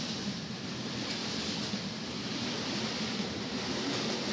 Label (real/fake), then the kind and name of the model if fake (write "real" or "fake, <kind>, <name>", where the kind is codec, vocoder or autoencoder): real